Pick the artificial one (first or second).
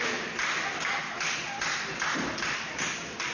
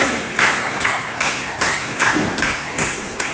second